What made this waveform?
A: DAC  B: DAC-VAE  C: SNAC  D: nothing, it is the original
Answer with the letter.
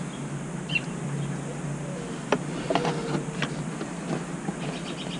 D